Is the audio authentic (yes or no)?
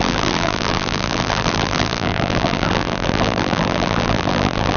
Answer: no